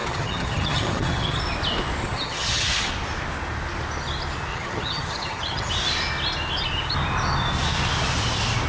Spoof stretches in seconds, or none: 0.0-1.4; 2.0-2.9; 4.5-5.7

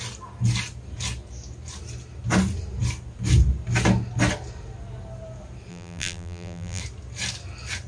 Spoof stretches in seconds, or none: 5.7-6.8